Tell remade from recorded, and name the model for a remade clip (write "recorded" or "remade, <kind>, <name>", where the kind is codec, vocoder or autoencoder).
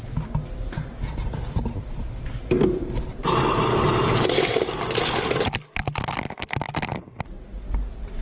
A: recorded